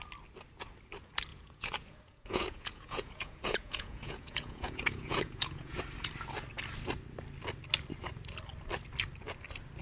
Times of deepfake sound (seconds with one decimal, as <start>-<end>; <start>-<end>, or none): 1.3-5.8